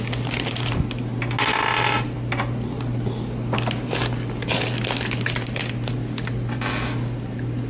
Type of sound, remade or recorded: recorded